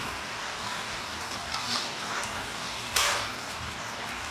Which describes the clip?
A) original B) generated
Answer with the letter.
B